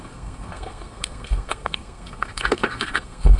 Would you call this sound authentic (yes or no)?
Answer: no